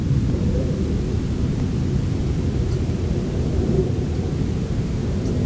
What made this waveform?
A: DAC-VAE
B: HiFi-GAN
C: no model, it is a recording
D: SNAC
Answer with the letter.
C